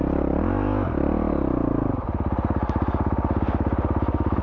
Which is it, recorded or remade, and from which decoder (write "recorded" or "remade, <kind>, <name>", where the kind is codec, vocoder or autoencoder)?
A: recorded